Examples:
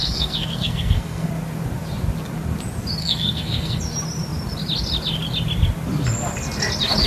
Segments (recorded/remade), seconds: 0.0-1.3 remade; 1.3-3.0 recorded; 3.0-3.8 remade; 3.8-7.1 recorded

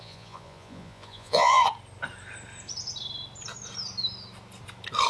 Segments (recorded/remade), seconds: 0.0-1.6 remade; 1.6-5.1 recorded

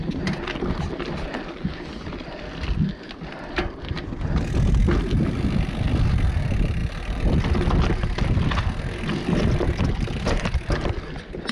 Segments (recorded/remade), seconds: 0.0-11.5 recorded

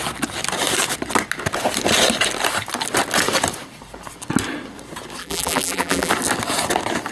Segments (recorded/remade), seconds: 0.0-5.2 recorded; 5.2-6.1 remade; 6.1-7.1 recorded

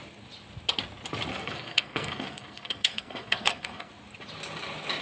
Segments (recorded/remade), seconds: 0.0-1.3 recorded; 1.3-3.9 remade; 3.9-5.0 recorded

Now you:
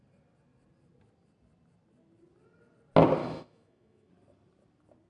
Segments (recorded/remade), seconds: 0.0-3.2 recorded; 3.2-4.1 remade; 4.1-5.1 recorded